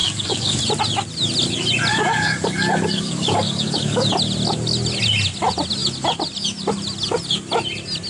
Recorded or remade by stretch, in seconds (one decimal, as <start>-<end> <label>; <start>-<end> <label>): 0.0-0.6 remade; 0.6-1.9 recorded; 1.9-4.1 remade; 4.1-8.1 recorded